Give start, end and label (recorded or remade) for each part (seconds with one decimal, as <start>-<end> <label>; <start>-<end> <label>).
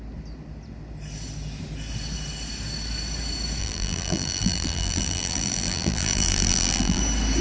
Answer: 0.0-3.6 recorded; 3.6-7.0 remade; 7.0-7.4 recorded